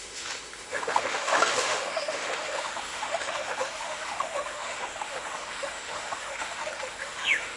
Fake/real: fake